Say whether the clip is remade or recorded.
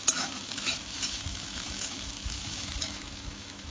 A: remade